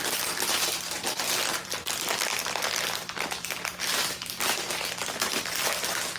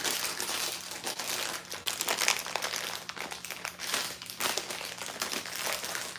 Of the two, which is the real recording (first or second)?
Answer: second